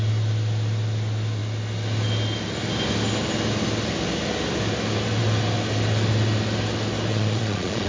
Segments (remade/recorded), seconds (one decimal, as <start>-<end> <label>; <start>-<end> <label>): 0.0-7.1 recorded; 7.1-7.9 remade

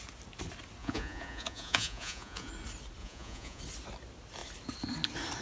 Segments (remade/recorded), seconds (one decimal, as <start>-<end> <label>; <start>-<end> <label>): 0.0-0.8 recorded; 0.8-2.5 remade; 2.5-3.0 recorded; 3.0-3.6 remade; 3.6-5.4 recorded

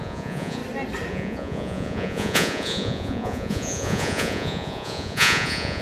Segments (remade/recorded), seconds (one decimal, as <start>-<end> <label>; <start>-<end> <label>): 0.0-0.6 remade; 0.6-1.1 recorded; 1.1-5.8 remade